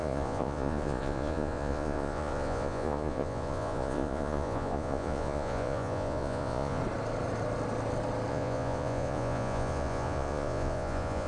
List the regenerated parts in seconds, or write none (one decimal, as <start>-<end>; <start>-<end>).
0.0-6.8; 8.3-11.3